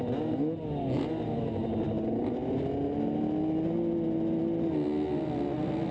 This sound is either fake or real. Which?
real